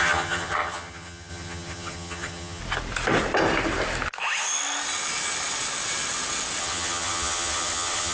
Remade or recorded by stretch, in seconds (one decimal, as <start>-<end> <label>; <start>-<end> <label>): 0.0-2.6 remade; 2.6-6.6 recorded; 6.6-8.1 remade